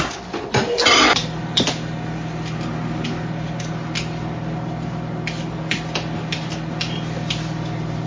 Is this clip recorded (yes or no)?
yes